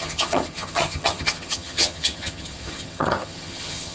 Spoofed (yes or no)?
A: yes